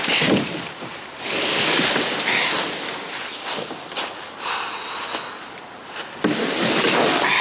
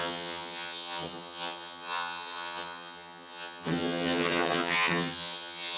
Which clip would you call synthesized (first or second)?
second